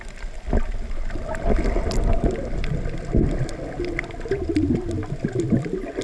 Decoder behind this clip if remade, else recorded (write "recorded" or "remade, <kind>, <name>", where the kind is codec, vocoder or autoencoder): recorded